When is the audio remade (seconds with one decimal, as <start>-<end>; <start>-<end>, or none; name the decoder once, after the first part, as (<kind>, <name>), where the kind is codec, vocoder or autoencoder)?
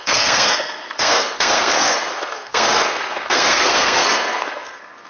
0.0-5.1 (codec, SNAC)